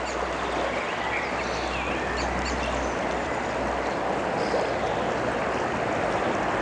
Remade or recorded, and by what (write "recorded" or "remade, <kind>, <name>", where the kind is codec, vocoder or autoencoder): recorded